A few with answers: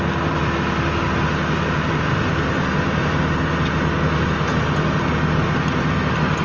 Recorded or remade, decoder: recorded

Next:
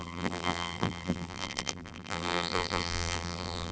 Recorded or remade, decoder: remade, vocoder, BigVGAN v2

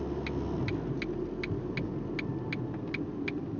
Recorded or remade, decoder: recorded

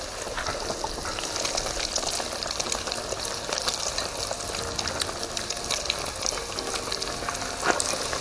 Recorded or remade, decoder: recorded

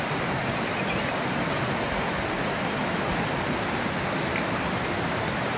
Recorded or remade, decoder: recorded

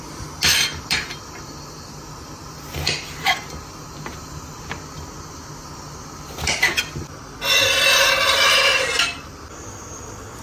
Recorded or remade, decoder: recorded